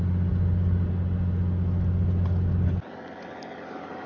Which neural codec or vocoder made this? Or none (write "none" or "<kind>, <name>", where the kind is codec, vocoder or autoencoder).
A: none